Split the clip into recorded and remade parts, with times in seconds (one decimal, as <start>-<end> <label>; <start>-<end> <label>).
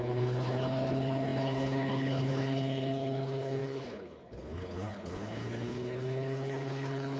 0.0-7.2 remade